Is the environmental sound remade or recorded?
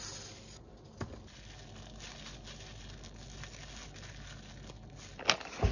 recorded